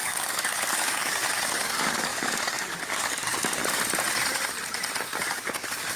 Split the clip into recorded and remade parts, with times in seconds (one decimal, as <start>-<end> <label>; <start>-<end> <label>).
0.0-3.6 remade; 3.6-5.2 recorded; 5.2-6.0 remade

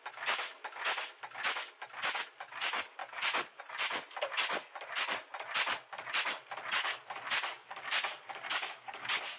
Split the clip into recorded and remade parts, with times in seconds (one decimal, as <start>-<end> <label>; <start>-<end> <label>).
0.0-3.0 recorded; 3.0-3.6 remade; 3.6-7.6 recorded; 7.6-9.4 remade

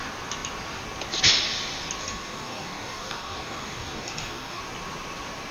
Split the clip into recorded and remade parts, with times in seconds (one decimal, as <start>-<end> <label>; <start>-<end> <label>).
0.0-2.0 recorded; 2.0-4.6 remade; 4.6-5.5 recorded

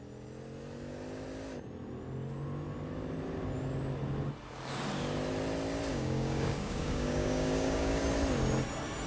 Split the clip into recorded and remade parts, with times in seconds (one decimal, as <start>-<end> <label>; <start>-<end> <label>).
0.0-5.9 recorded; 5.9-8.0 remade; 8.0-9.1 recorded

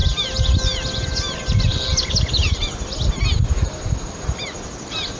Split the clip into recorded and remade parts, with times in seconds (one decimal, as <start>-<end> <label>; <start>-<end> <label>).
0.0-5.2 recorded

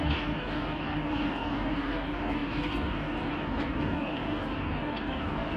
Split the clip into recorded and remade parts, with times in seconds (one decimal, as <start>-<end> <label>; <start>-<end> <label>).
0.0-5.6 remade

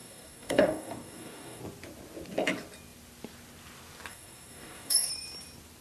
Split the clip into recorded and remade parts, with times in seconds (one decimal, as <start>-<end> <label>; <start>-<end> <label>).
0.0-1.6 remade; 1.6-4.1 recorded; 4.1-5.1 remade; 5.1-5.8 recorded